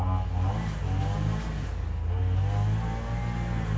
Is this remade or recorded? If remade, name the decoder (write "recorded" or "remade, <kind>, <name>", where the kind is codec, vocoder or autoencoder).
recorded